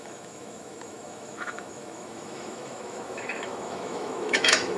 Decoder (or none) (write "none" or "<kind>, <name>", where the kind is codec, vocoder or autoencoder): autoencoder, DAC-VAE